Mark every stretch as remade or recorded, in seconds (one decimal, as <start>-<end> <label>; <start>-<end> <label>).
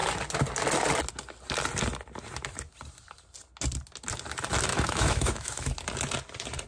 0.0-4.7 recorded; 4.7-5.7 remade; 5.7-6.7 recorded